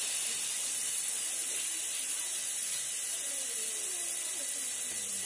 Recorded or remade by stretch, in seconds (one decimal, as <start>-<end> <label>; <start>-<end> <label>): 0.0-2.4 remade; 2.4-3.9 recorded; 3.9-5.3 remade